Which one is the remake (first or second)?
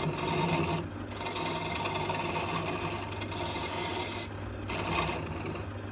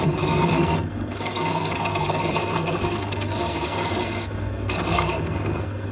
second